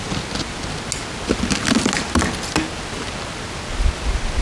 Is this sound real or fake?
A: real